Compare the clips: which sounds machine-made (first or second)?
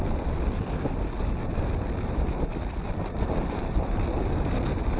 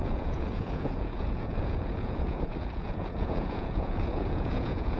second